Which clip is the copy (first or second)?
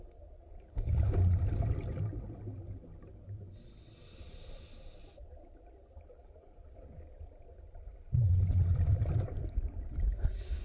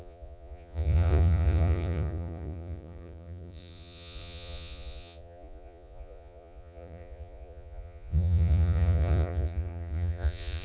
second